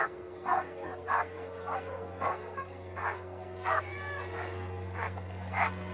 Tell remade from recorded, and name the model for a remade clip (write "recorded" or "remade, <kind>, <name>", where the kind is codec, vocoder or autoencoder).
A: remade, codec, SNAC